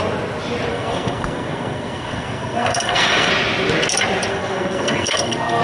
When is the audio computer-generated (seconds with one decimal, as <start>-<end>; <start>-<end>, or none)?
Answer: 0.7-3.3; 4.3-5.6